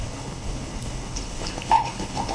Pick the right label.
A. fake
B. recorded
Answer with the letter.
A